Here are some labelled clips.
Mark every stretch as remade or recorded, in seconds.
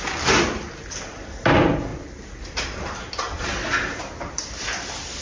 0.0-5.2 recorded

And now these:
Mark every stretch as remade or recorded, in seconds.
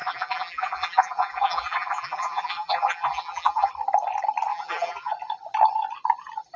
0.0-3.7 remade; 3.7-4.5 recorded; 4.5-5.1 remade; 5.1-6.6 recorded